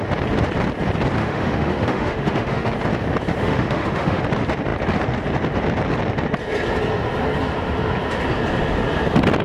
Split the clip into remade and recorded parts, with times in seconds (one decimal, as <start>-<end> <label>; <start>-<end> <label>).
0.0-1.2 recorded; 1.2-2.7 remade; 2.7-3.4 recorded; 3.4-4.2 remade; 4.2-9.4 recorded